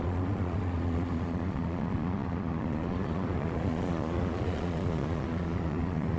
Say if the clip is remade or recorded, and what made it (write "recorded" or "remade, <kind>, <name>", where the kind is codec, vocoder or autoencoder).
remade, vocoder, Vocos